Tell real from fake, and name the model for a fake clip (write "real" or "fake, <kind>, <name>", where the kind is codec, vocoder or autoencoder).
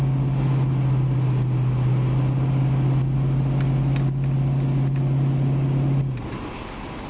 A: real